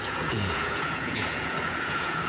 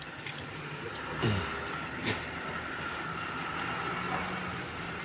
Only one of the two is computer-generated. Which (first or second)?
first